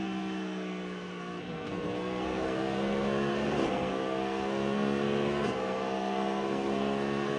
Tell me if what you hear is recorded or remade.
remade